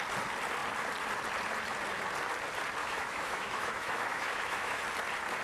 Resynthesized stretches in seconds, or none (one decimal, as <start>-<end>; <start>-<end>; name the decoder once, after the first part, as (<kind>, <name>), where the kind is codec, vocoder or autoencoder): 2.8-4.8 (autoencoder, DAC-VAE)